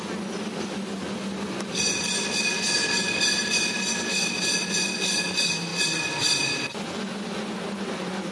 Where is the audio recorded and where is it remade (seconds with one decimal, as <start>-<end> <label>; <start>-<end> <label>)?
0.0-8.3 recorded